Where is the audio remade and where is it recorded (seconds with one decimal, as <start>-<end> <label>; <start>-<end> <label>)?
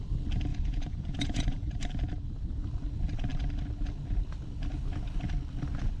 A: 0.0-0.5 recorded; 0.5-1.7 remade; 1.7-6.0 recorded